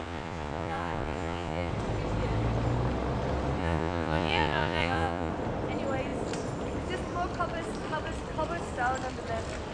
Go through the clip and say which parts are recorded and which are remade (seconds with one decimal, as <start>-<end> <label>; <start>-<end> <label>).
0.0-1.7 remade; 1.7-3.6 recorded; 3.6-5.3 remade; 5.3-9.7 recorded